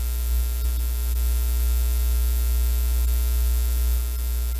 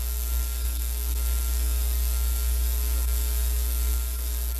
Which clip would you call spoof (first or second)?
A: second